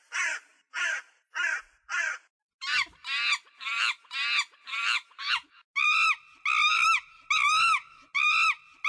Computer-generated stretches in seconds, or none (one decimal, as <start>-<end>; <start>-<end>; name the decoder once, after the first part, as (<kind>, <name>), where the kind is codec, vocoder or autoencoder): 0.5-1.6 (vocoder, BigVGAN v2)